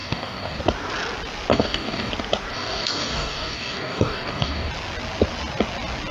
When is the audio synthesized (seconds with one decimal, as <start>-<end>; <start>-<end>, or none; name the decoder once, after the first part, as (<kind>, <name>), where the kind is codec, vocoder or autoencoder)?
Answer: 0.0-0.6 (codec, DAC); 1.5-2.1; 2.5-4.7